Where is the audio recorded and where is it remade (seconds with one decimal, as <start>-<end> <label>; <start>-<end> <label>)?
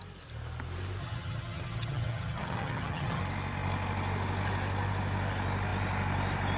0.0-1.0 recorded; 1.0-3.2 remade; 3.2-6.6 recorded